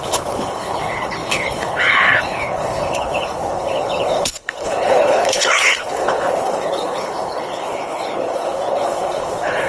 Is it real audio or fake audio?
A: fake